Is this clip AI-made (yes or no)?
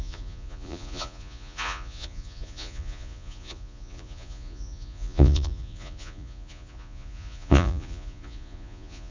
yes